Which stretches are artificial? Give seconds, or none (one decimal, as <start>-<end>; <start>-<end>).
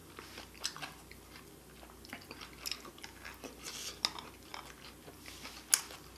none